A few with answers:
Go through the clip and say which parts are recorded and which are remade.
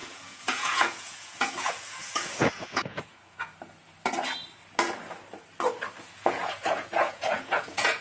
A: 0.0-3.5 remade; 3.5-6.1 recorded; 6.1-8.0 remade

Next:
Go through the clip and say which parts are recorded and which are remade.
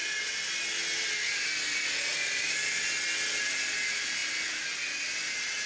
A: 0.0-5.7 recorded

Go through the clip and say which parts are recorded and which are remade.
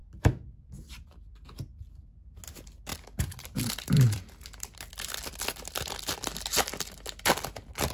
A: 0.0-2.9 recorded; 2.9-5.1 remade; 5.1-7.9 recorded